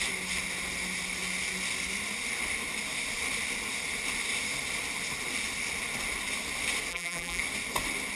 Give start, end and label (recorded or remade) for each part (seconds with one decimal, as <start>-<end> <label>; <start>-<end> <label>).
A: 0.0-6.9 recorded; 6.9-7.4 remade; 7.4-8.2 recorded